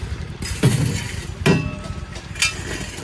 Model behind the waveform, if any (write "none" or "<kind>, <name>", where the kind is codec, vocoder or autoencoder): none